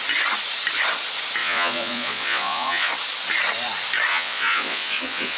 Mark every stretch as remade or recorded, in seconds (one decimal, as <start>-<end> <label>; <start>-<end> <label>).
0.0-1.4 recorded; 1.4-2.9 remade; 2.9-4.1 recorded; 4.1-5.4 remade